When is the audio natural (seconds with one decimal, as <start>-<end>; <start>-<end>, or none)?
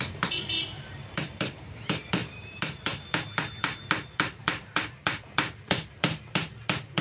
none